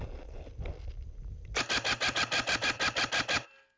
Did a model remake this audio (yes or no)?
no